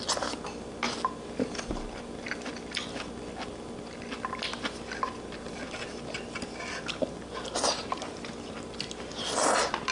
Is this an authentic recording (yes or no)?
yes